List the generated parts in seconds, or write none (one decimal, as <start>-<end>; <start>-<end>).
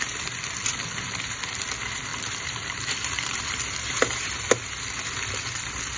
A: 0.0-6.0